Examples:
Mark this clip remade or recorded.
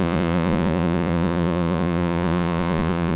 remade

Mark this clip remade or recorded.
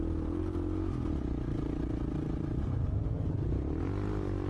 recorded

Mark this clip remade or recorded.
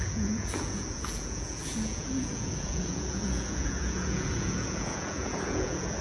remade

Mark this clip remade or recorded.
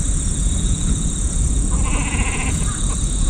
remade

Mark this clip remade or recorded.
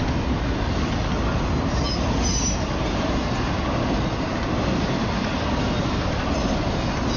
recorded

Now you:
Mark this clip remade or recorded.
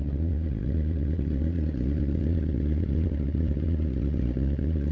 remade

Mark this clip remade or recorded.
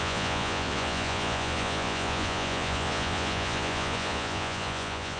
remade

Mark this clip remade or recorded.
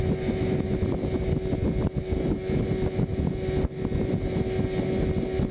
recorded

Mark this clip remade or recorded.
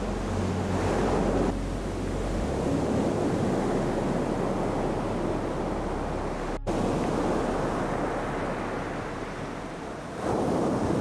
recorded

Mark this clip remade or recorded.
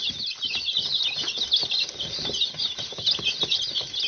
recorded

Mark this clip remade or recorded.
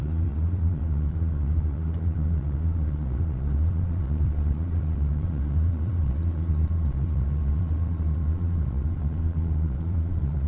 remade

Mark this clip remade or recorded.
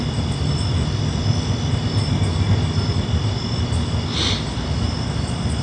recorded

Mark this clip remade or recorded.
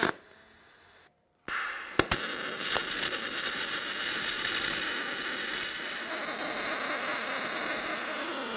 recorded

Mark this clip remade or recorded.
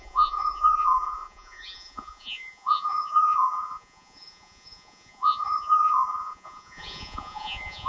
remade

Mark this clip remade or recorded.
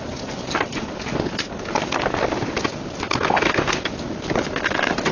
recorded